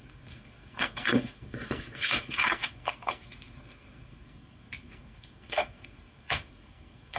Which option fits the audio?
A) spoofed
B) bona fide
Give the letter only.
A